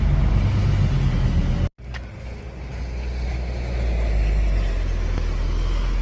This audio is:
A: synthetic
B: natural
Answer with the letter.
B